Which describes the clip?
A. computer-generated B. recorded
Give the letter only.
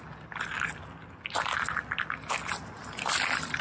B